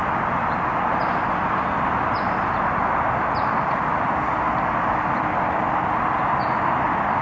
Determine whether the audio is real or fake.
real